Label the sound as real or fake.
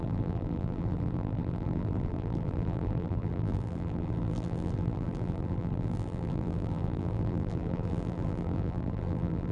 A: fake